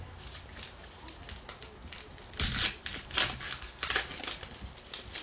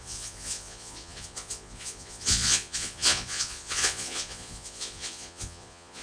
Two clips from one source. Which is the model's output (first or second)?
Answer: second